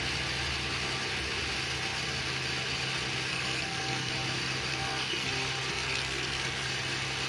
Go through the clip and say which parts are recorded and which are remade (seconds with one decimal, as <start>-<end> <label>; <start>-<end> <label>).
0.0-3.3 recorded; 3.3-4.1 remade; 4.1-4.7 recorded; 4.7-5.3 remade; 5.3-5.7 recorded; 5.7-6.7 remade; 6.7-7.3 recorded